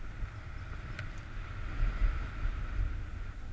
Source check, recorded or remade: recorded